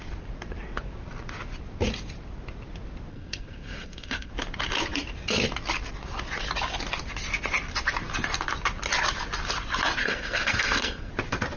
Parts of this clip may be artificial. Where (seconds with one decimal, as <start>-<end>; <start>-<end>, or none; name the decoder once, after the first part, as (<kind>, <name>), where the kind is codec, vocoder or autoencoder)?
3.1-4.3 (codec, SNAC); 10.0-11.1